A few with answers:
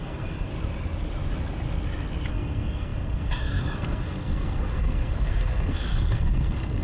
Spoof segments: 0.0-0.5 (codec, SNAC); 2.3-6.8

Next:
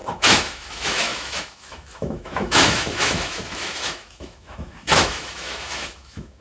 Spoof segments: 0.0-6.4 (autoencoder, DAC-VAE)

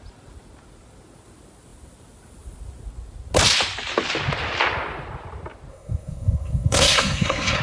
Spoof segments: 5.7-7.6 (codec, SNAC)

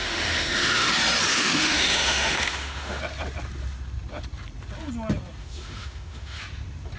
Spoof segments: 0.0-0.9 (autoencoder, DAC-VAE); 1.3-3.0; 5.4-6.4

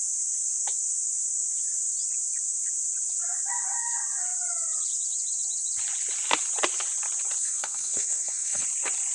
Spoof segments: 7.4-8.6 (codec, SNAC)

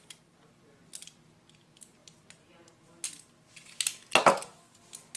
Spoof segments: none

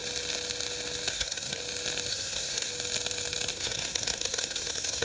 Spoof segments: 1.1-1.6 (codec, SNAC); 2.1-2.7; 3.5-5.0